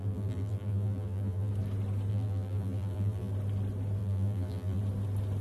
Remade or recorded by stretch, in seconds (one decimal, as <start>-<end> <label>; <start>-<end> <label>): 0.0-1.5 remade; 1.5-2.1 recorded; 2.1-3.3 remade; 3.3-4.0 recorded; 4.0-4.8 remade; 4.8-5.4 recorded